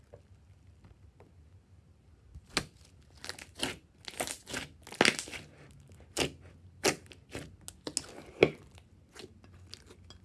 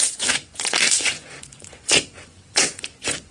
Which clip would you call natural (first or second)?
first